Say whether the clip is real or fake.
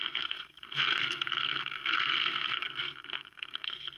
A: fake